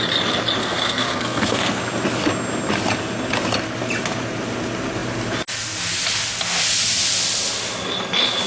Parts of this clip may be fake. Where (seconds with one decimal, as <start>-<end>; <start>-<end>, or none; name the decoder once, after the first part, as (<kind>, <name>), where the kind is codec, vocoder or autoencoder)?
0.6-1.8 (codec, SNAC)